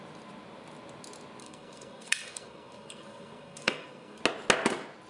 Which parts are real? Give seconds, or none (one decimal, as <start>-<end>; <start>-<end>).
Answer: 0.0-1.4; 4.2-5.1